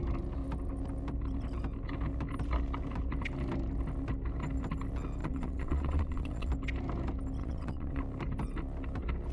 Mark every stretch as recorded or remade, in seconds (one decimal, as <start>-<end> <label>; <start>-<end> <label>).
0.0-5.2 recorded; 5.2-6.5 remade; 6.5-7.4 recorded; 7.4-8.0 remade; 8.0-9.3 recorded